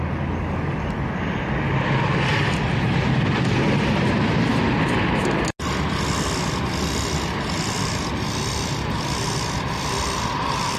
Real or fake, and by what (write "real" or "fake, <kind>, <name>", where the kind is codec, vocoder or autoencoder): real